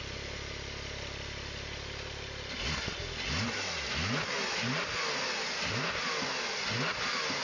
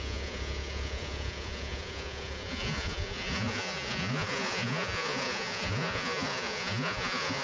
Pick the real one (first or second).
first